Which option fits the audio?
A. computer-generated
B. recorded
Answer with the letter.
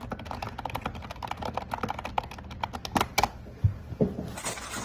B